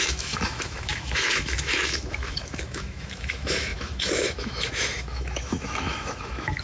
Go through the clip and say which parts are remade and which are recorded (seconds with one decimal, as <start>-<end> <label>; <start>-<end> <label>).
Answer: 0.0-6.6 remade